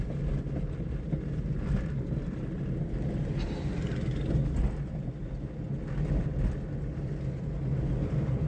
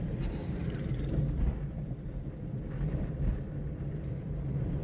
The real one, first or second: first